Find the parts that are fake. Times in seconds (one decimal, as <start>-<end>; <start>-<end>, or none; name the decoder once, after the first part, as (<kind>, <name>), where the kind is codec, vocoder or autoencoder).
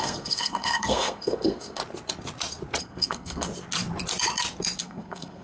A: 0.0-1.8 (codec, SNAC); 2.8-3.5; 4.8-5.4